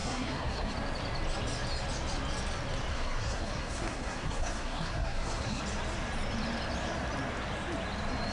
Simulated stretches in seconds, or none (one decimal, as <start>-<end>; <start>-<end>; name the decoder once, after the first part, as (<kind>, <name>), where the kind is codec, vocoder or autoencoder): 0.0-0.7 (codec, SNAC); 2.9-5.6